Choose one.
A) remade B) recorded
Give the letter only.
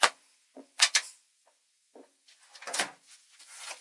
A